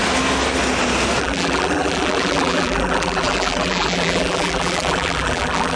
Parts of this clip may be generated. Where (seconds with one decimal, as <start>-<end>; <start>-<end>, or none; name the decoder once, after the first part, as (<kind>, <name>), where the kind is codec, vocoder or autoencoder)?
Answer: 1.2-5.8 (vocoder, BigVGAN v2)